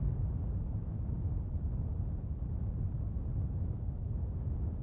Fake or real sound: real